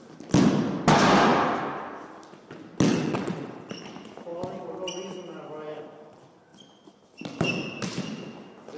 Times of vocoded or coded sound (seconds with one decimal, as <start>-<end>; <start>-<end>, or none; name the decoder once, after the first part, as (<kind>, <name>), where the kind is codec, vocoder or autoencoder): 2.9-3.7 (vocoder, WaveNeXt)